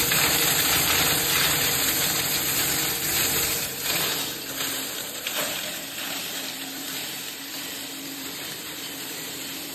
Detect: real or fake fake